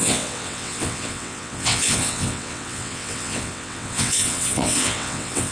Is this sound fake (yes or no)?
yes